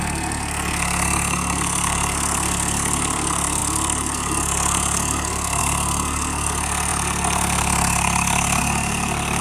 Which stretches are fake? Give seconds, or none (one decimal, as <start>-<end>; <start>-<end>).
0.0-9.4